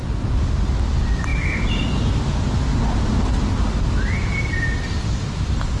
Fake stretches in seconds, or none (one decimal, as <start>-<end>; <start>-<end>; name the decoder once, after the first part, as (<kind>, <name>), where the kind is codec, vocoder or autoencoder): none